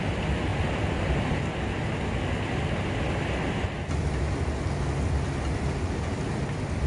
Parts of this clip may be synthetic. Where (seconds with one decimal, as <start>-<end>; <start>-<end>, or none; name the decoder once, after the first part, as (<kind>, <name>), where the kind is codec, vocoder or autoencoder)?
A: none